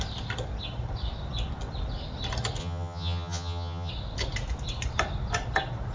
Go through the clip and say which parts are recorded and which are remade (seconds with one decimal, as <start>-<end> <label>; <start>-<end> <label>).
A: 0.0-2.6 recorded; 2.6-3.9 remade; 3.9-5.9 recorded